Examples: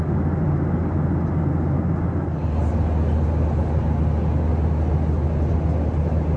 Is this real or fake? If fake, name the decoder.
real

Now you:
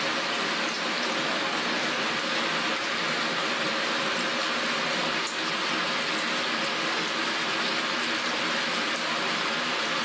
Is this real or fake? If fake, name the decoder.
real